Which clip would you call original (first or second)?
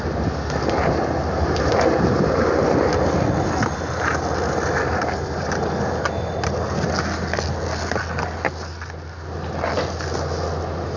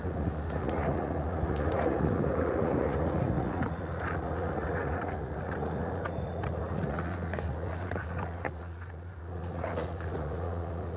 first